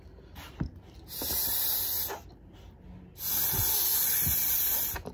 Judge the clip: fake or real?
real